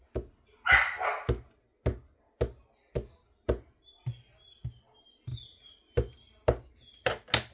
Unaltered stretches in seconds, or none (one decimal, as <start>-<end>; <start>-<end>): 0.0-7.5